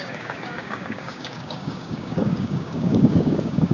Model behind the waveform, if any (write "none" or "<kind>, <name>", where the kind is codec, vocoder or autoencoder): codec, DAC